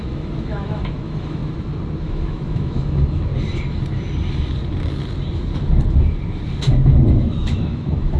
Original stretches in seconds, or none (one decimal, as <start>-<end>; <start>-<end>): 1.4-2.0; 3.3-7.2